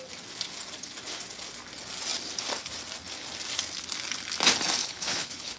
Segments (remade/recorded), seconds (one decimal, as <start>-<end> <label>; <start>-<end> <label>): 0.0-4.8 recorded; 4.8-5.6 remade